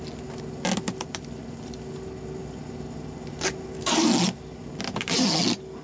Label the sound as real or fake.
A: real